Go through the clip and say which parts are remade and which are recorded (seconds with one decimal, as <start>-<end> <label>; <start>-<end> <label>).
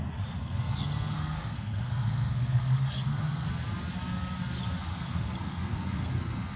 0.0-0.4 recorded; 0.4-3.5 remade; 3.5-4.9 recorded; 4.9-6.1 remade; 6.1-6.6 recorded